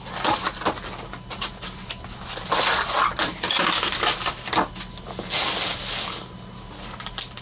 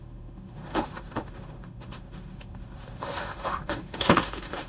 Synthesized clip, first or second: second